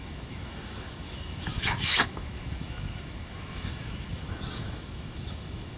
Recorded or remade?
remade